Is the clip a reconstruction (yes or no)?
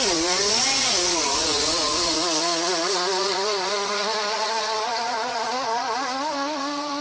yes